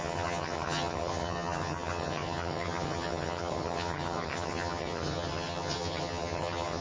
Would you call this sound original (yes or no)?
no